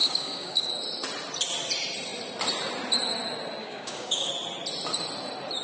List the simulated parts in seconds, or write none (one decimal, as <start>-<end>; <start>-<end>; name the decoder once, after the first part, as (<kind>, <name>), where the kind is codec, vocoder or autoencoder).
0.0-0.7 (codec, DAC); 3.6-4.3